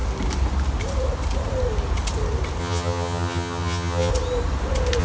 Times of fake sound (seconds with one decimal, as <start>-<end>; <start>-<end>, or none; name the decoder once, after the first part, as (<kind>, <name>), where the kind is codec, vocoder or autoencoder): 2.6-4.1 (vocoder, HiFi-GAN)